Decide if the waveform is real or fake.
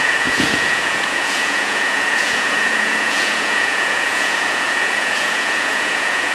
fake